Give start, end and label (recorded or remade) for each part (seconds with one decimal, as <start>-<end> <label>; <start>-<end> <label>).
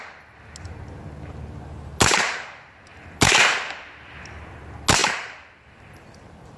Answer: 0.0-6.6 recorded